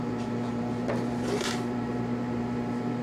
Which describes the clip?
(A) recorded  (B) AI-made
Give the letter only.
B